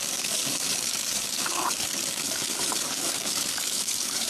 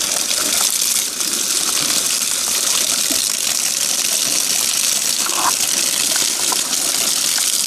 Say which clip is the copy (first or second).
first